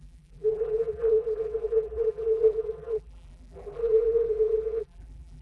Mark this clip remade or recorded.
remade